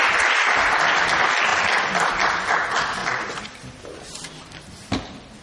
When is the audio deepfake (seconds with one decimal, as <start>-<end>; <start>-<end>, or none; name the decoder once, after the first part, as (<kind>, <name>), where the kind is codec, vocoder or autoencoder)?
3.0-4.6 (vocoder, BigVGAN v2)